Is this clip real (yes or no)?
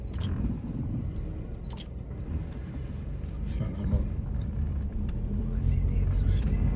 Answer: no